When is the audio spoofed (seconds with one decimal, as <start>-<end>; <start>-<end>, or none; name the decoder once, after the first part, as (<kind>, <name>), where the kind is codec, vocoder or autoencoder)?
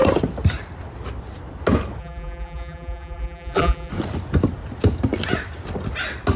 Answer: 2.0-3.9 (vocoder, BigVGAN v2)